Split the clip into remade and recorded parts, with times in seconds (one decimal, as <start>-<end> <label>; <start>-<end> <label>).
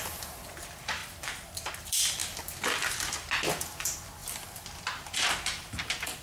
0.0-2.2 remade; 2.2-3.5 recorded; 3.5-6.2 remade